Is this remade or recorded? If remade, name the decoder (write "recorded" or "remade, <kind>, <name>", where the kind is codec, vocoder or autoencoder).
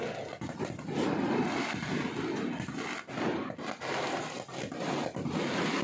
recorded